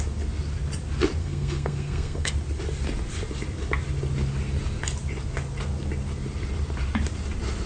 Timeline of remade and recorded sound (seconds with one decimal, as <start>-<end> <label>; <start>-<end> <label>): 0.0-1.2 recorded; 1.2-2.3 remade; 2.3-7.7 recorded